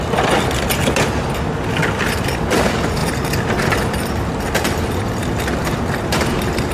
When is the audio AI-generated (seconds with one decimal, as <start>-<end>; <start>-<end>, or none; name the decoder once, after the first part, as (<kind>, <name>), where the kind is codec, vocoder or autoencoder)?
none